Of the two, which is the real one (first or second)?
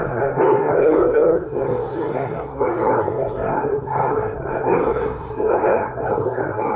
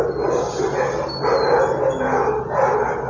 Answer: second